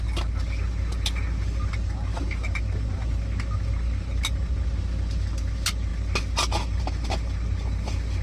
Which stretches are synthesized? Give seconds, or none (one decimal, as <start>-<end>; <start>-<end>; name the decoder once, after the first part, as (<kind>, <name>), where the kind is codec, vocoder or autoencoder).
none